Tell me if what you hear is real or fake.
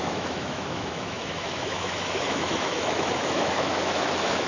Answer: fake